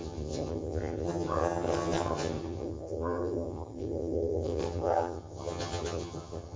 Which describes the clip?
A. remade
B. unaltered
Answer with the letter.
A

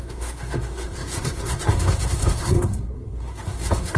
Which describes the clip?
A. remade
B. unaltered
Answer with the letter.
A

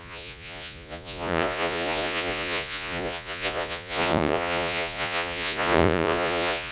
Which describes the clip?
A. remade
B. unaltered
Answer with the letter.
A